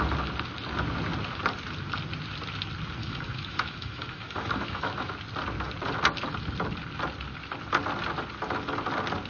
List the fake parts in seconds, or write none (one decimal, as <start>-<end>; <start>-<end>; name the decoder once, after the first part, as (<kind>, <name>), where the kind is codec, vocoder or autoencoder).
3.0-5.1 (autoencoder, DAC-VAE)